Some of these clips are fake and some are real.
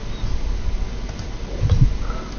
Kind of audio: real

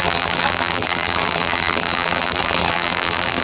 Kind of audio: fake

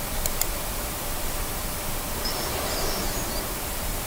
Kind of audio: fake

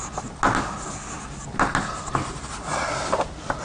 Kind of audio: real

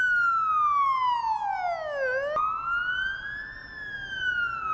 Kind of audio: real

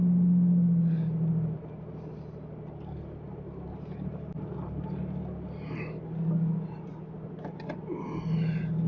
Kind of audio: real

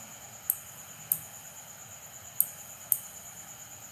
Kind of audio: real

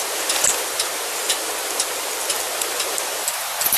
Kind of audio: real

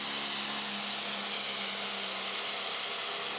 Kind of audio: real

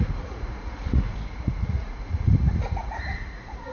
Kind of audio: fake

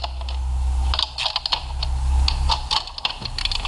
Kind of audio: real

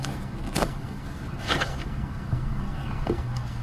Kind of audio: fake